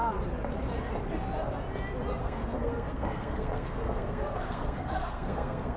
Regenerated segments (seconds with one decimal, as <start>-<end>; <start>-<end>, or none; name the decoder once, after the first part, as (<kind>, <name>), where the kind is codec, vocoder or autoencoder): 2.2-5.8 (codec, SNAC)